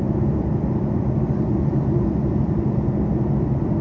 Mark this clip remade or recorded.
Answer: remade